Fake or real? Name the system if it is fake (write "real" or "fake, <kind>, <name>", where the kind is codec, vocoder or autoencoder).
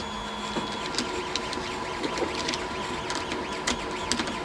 real